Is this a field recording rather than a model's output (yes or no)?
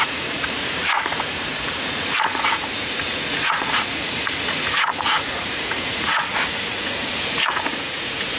no